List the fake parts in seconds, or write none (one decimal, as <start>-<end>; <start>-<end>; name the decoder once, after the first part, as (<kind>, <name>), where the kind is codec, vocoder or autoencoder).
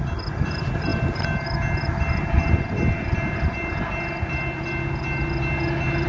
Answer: none